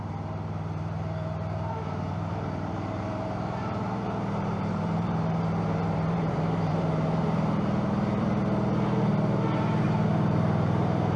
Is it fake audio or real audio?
fake